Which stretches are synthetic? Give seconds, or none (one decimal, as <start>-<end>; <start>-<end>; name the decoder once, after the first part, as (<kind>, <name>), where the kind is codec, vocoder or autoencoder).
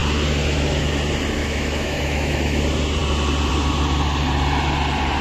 1.4-2.6 (autoencoder, DAC-VAE)